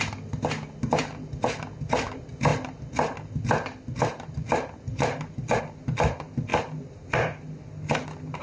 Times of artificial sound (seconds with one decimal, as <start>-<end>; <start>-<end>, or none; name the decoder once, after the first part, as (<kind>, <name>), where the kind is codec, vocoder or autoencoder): none